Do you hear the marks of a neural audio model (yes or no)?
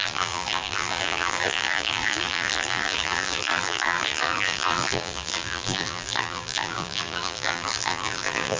yes